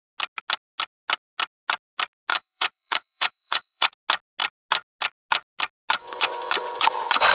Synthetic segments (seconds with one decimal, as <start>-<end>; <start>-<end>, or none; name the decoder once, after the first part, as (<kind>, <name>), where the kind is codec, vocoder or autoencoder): 2.3-3.9 (vocoder, Vocos); 6.0-7.3